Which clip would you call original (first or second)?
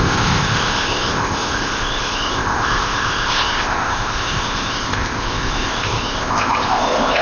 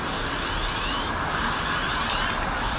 second